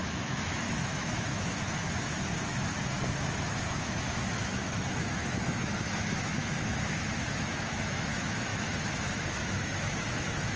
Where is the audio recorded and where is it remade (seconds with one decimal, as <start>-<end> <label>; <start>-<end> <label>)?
0.0-10.6 remade